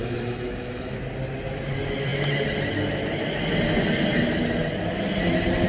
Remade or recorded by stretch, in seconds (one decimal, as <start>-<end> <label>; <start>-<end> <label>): 0.0-1.0 remade; 1.0-5.7 recorded